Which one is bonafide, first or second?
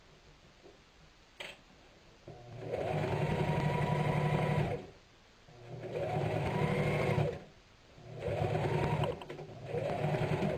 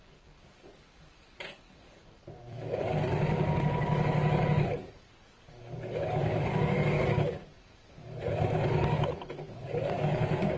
first